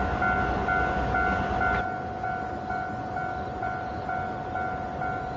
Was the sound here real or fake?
real